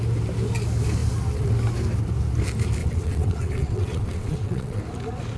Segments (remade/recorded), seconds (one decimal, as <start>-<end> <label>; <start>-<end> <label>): 0.0-2.8 recorded; 2.8-4.8 remade; 4.8-5.4 recorded